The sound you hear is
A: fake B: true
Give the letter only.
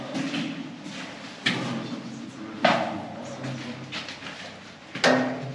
B